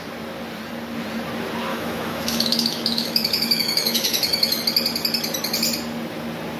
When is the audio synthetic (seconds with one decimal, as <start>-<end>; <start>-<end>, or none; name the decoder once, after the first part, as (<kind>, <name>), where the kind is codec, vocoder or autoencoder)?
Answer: 1.7-4.6 (autoencoder, DAC-VAE)